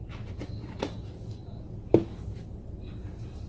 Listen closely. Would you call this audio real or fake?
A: real